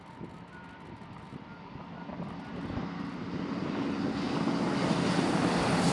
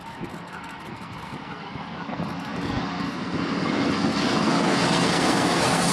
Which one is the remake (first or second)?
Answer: second